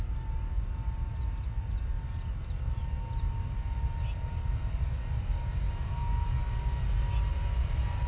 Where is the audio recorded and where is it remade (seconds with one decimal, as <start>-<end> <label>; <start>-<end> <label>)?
0.0-8.1 recorded